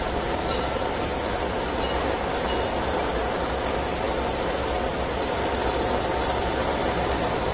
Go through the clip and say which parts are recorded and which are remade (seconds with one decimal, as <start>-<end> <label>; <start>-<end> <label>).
0.0-7.5 recorded